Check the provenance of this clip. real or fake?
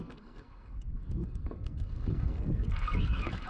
fake